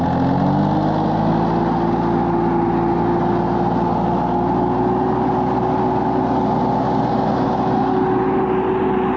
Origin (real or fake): real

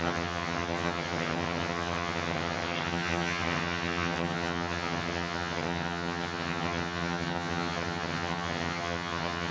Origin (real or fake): fake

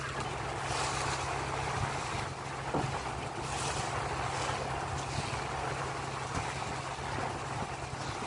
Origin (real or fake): real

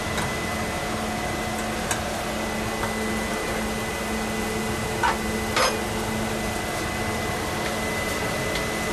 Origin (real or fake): real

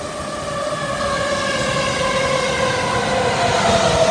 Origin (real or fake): real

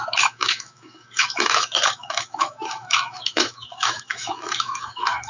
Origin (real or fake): fake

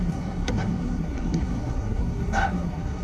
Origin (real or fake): fake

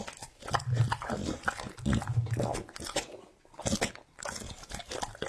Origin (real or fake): real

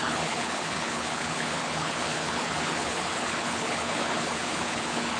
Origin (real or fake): fake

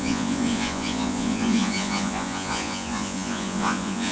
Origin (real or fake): fake